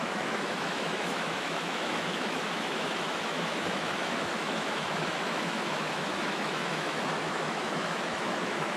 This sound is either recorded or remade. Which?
remade